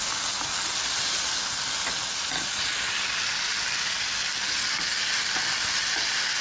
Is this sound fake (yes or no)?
no